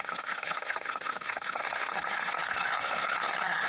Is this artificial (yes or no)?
yes